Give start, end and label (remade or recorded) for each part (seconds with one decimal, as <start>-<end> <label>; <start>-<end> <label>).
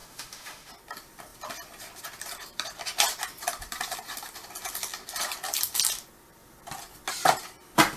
0.0-0.7 remade; 0.7-8.0 recorded